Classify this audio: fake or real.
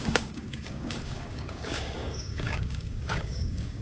fake